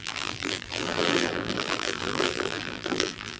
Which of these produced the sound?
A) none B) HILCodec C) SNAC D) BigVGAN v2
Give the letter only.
D